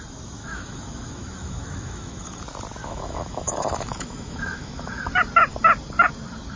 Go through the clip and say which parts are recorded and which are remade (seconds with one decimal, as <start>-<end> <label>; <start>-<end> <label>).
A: 0.0-0.4 recorded; 0.4-2.4 remade; 2.4-2.8 recorded; 2.8-5.1 remade; 5.1-6.6 recorded